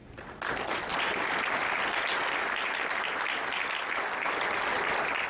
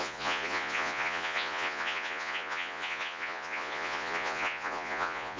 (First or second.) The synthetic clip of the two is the second